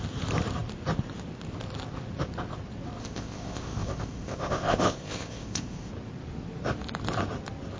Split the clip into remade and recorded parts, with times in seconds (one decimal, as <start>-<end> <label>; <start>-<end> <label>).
0.0-3.0 recorded; 3.0-5.9 remade; 5.9-7.8 recorded